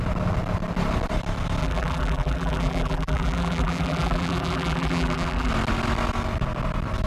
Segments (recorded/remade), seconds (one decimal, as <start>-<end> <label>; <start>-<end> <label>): 0.0-1.6 recorded; 1.6-5.5 remade; 5.5-7.1 recorded